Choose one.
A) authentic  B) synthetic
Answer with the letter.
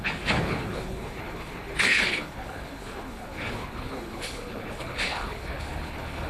B